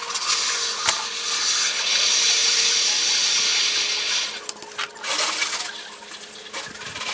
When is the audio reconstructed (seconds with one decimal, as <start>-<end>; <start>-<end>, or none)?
none